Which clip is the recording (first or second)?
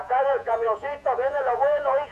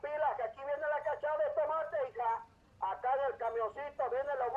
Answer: second